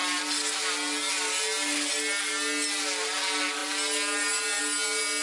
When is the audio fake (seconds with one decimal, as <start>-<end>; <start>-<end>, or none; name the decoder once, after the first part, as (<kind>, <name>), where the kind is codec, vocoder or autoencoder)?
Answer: none